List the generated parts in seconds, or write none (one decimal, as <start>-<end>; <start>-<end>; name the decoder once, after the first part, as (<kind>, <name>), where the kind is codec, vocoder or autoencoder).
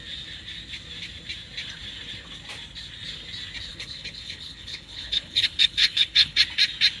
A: 3.7-6.4 (codec, HILCodec)